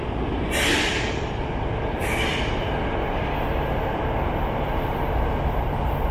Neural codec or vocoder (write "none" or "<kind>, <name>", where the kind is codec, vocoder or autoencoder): none